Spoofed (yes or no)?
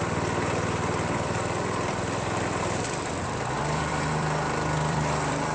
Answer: yes